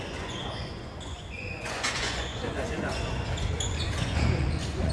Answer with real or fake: fake